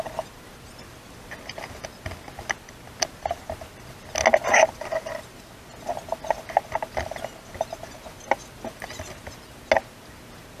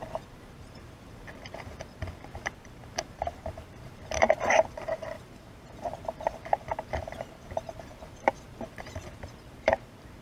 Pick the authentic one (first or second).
first